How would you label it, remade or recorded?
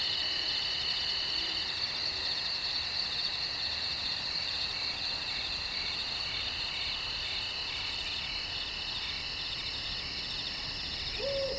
recorded